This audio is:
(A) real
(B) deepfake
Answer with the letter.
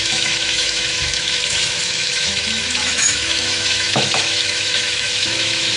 B